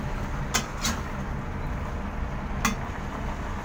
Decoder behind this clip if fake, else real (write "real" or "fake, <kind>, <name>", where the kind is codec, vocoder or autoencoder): real